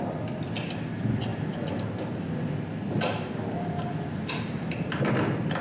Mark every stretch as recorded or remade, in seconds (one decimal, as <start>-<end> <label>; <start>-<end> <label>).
0.0-5.6 recorded